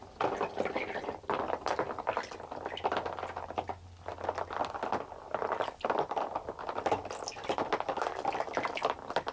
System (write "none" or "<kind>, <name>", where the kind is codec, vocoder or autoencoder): none